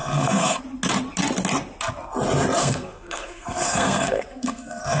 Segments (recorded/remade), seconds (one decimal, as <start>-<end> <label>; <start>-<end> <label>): 0.0-0.6 remade; 0.6-2.6 recorded; 2.6-5.0 remade